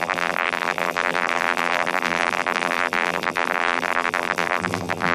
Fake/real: fake